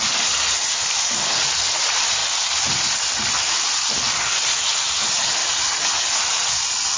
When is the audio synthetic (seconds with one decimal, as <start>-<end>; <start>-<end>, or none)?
none